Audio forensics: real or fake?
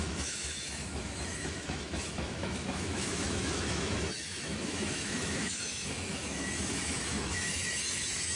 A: fake